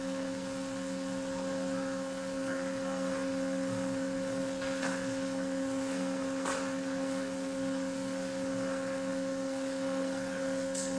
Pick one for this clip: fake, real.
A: fake